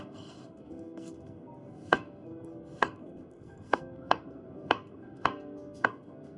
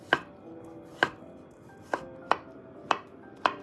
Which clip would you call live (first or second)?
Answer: second